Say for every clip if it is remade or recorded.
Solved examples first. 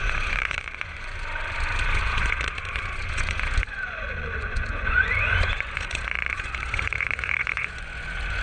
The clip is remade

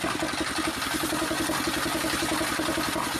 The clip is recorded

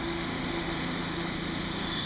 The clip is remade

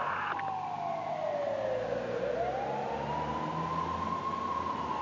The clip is recorded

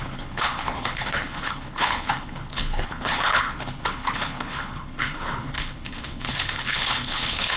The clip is remade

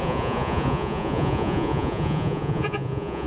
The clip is remade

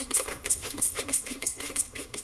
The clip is remade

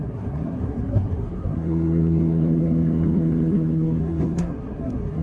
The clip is remade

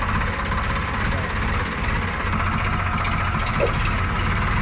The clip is recorded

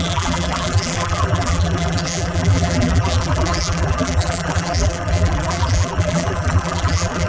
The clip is remade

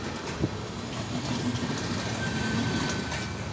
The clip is recorded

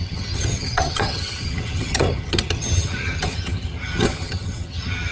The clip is remade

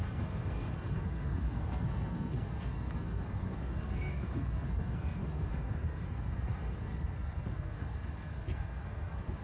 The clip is remade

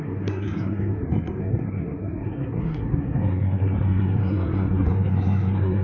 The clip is remade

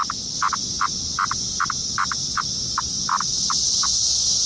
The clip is recorded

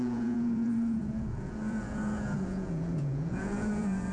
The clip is remade